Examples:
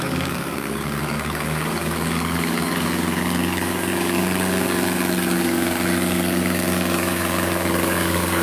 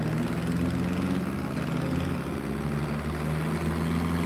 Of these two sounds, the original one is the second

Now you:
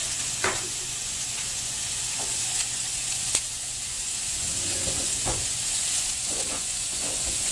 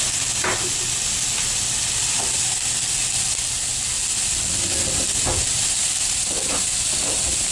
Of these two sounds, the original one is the second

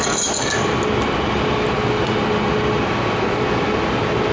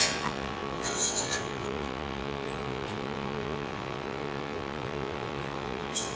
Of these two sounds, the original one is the first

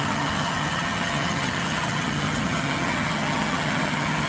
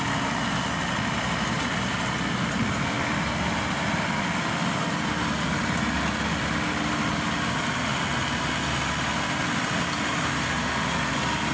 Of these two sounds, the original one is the second